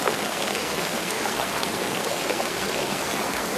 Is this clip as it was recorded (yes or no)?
no